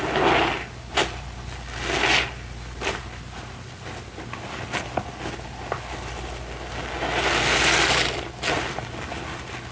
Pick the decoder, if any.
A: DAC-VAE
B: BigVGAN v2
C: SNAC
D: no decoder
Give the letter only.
D